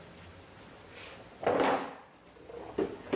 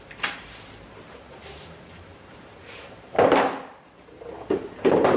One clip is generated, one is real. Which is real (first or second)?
first